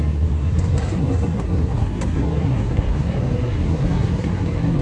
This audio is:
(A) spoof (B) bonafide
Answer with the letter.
A